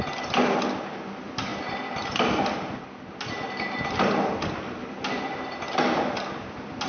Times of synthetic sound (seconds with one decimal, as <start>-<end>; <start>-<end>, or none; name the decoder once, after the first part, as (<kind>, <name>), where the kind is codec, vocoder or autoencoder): none